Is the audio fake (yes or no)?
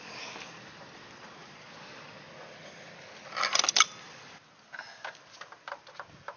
no